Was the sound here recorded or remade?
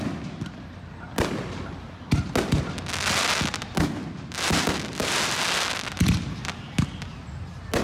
recorded